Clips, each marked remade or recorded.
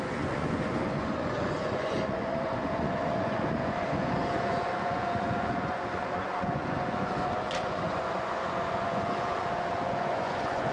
remade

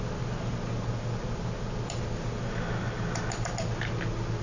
recorded